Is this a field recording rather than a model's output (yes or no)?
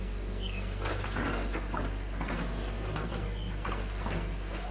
no